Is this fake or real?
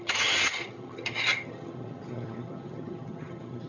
fake